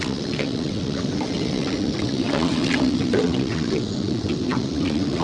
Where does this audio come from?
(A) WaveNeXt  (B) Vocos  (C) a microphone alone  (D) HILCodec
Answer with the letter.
A